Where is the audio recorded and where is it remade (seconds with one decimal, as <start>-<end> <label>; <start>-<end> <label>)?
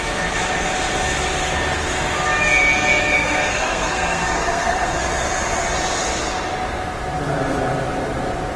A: 0.0-3.1 recorded; 3.1-4.9 remade; 4.9-8.6 recorded